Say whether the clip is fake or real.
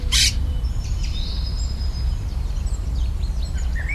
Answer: fake